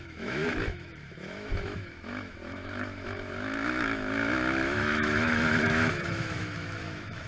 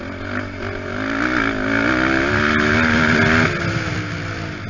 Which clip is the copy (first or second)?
first